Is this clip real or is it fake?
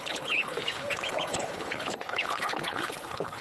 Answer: fake